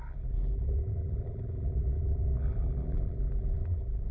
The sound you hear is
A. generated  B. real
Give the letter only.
A